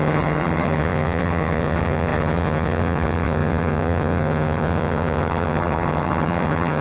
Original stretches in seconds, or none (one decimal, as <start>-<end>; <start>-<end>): none